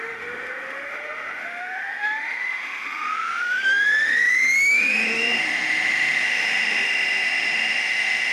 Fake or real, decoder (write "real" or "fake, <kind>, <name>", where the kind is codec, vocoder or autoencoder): fake, autoencoder, DAC-VAE